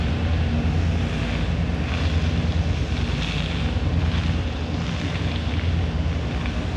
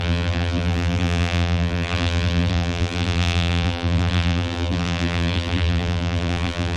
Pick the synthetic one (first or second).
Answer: second